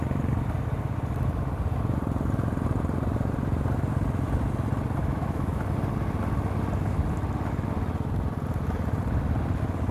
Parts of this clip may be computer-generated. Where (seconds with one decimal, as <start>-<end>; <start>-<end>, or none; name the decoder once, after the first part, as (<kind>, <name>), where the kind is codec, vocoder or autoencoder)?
5.0-5.6 (autoencoder, DAC-VAE)